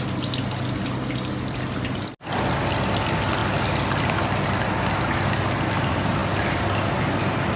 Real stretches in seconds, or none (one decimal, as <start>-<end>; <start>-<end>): 0.0-7.6